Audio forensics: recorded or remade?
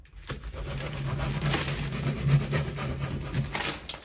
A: recorded